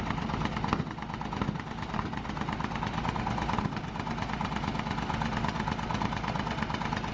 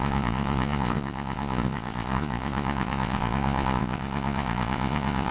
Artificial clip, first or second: second